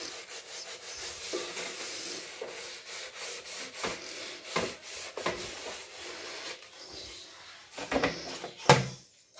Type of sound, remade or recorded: recorded